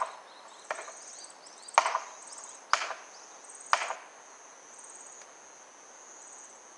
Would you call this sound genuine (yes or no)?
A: yes